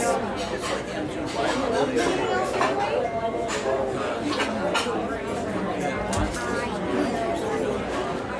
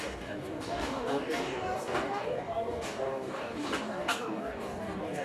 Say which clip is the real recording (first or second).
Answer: first